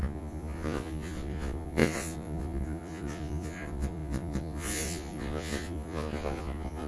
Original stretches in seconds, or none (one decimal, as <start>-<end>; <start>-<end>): none